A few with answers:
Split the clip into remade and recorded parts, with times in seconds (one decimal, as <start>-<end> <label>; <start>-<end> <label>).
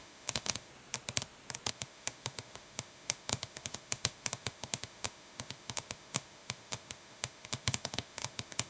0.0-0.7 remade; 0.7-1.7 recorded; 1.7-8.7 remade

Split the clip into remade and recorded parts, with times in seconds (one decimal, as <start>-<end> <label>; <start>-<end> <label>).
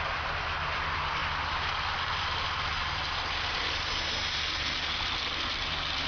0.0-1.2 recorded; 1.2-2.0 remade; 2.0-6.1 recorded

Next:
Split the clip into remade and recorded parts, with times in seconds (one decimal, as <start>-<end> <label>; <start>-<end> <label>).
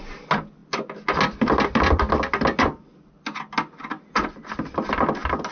0.0-5.5 recorded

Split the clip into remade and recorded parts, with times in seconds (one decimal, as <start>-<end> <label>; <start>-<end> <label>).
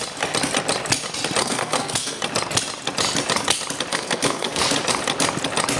0.0-1.4 recorded; 1.4-2.2 remade; 2.2-3.9 recorded; 3.9-4.6 remade; 4.6-5.8 recorded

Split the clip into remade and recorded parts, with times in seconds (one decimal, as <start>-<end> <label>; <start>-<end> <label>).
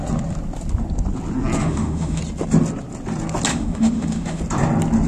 0.0-1.6 recorded; 1.6-2.2 remade; 2.2-3.5 recorded; 3.5-4.4 remade; 4.4-5.1 recorded